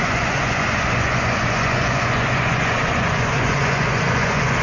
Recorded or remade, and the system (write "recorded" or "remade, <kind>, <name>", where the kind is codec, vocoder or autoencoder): remade, vocoder, Vocos